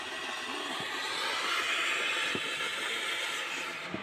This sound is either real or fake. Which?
real